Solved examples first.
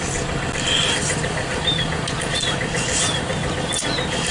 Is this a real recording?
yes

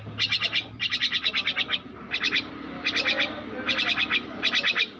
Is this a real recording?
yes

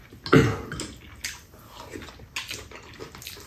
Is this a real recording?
yes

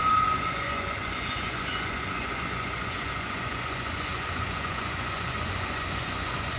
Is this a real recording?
no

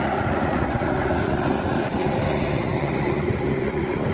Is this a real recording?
no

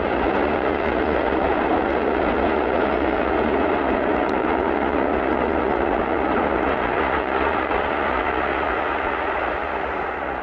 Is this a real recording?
no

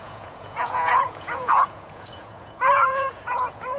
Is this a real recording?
no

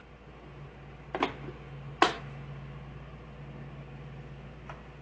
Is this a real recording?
yes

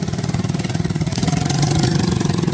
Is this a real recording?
no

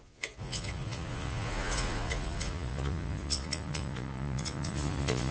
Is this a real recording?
no